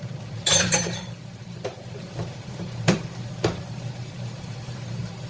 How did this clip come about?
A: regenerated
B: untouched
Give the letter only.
A